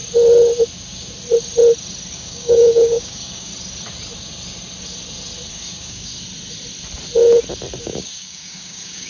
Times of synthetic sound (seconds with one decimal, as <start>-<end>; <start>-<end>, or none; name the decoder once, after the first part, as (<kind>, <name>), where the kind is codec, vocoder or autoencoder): 2.1-3.5 (codec, DAC); 5.5-6.1; 7.8-9.1